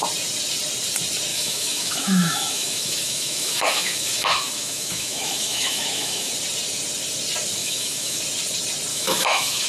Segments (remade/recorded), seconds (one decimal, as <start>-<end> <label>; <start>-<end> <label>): 0.0-1.3 recorded; 1.3-6.3 remade; 6.3-7.6 recorded; 7.6-8.2 remade; 8.2-8.9 recorded; 8.9-9.7 remade